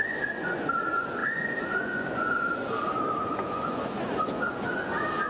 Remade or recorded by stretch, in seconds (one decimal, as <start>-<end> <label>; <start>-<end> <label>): 0.0-2.6 remade; 2.6-3.2 recorded; 3.2-5.3 remade